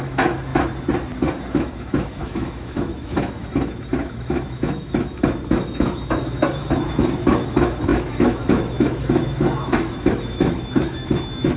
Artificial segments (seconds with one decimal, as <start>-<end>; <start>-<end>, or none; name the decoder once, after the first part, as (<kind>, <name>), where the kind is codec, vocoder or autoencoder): 0.0-0.5 (autoencoder, DAC-VAE); 1.5-11.6